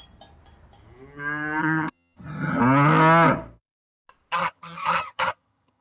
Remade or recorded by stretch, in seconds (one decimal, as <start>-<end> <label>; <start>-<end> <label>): 0.0-1.6 recorded; 1.6-2.6 remade; 2.6-4.4 recorded; 4.4-5.8 remade